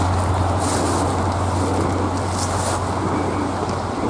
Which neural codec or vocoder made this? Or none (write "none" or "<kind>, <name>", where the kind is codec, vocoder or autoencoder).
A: none